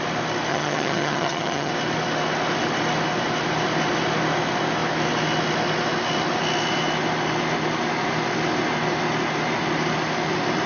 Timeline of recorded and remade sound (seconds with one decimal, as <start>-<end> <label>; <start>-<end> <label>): 0.0-0.5 recorded; 0.5-1.7 remade; 1.7-10.7 recorded